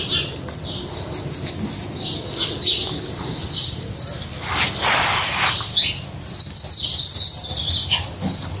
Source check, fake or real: real